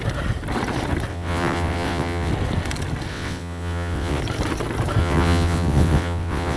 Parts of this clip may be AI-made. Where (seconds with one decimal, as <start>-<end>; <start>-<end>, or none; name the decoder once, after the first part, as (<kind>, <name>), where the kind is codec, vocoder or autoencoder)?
1.1-2.3 (vocoder, WaveNeXt); 3.1-4.2; 5.0-6.6